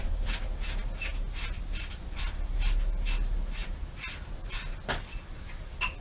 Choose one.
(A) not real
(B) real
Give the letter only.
B